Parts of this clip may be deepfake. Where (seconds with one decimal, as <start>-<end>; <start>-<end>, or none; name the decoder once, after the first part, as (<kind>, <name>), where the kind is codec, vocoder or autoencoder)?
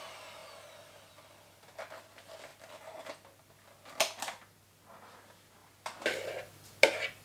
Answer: 2.5-3.4 (vocoder, BigVGAN v2)